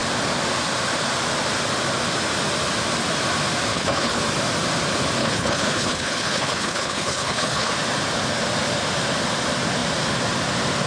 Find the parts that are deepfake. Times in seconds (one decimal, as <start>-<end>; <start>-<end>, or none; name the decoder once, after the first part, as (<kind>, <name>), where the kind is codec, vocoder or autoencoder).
3.7-4.2 (codec, HILCodec); 5.2-7.7